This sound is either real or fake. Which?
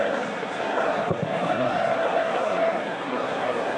fake